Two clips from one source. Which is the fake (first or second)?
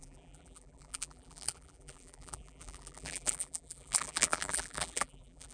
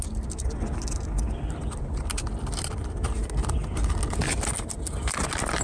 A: first